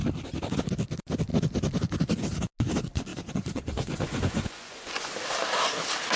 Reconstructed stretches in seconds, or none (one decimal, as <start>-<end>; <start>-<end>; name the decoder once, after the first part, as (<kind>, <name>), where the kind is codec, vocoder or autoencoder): 3.1-5.1 (vocoder, Vocos)